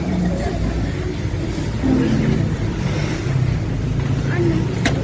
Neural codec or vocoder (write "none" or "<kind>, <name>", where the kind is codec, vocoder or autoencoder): none